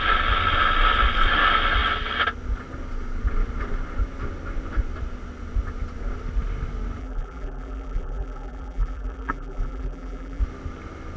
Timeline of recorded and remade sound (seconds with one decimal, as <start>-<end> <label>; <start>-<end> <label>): 0.0-7.0 recorded; 7.0-10.4 remade; 10.4-11.2 recorded

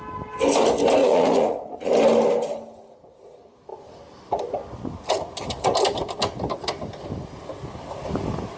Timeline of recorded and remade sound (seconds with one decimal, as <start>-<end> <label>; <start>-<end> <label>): 0.0-1.0 recorded; 1.0-1.9 remade; 1.9-8.6 recorded

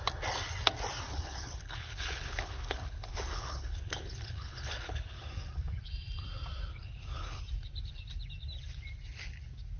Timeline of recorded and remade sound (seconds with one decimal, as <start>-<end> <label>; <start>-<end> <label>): 0.0-1.1 recorded; 1.1-5.3 remade; 5.3-6.7 recorded; 6.7-7.4 remade; 7.4-9.8 recorded

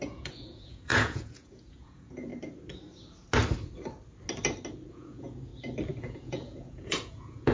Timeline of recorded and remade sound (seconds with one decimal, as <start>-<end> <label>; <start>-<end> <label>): 0.0-2.3 remade; 2.3-4.9 recorded; 4.9-5.5 remade; 5.5-6.0 recorded; 6.0-7.5 remade

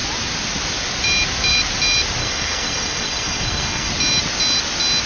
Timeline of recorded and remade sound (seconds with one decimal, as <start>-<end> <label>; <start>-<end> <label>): 0.0-2.2 recorded; 2.2-3.9 remade; 3.9-5.1 recorded

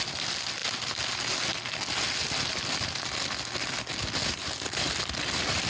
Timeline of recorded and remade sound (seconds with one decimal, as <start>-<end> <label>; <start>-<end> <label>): 0.0-4.4 recorded; 4.4-4.9 remade; 4.9-5.7 recorded

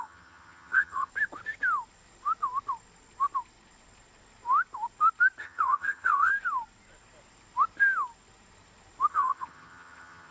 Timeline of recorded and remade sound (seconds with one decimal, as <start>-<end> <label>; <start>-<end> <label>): 0.0-1.1 remade; 1.1-5.4 recorded; 5.4-6.3 remade; 6.3-9.1 recorded; 9.1-10.3 remade